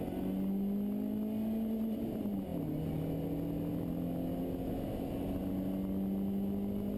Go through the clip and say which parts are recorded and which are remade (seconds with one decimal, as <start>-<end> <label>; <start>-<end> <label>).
0.0-7.0 recorded